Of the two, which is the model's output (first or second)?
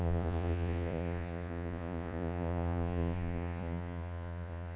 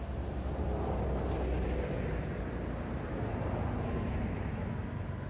first